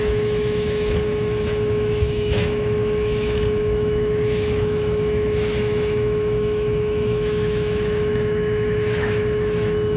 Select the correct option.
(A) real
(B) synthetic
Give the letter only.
B